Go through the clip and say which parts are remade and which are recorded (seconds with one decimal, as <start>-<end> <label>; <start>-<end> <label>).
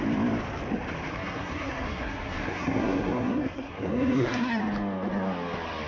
0.0-1.1 recorded; 1.1-4.6 remade; 4.6-5.9 recorded